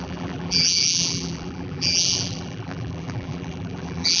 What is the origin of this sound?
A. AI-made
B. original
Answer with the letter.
A